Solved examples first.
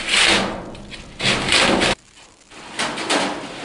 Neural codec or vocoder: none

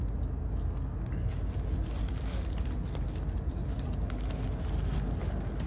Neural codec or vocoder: none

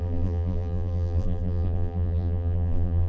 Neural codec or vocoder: vocoder, BigVGAN v2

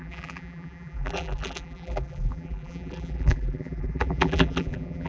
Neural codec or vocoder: vocoder, BigVGAN v2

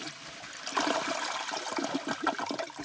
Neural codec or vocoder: none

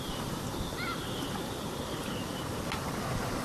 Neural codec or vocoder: none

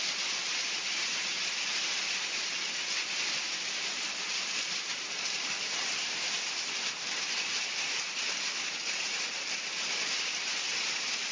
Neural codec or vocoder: none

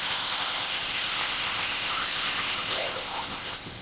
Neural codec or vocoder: codec, ZipCodec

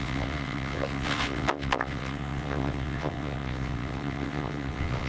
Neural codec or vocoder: vocoder, WaveNeXt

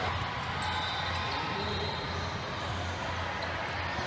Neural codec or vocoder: none